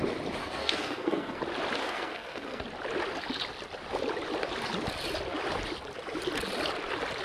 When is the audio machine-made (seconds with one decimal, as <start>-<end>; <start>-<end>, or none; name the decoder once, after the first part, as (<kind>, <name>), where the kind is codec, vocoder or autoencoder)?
0.4-1.4 (codec, SNAC); 1.8-2.6